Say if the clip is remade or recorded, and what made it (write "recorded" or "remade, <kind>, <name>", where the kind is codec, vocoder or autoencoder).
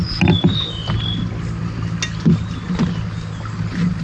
recorded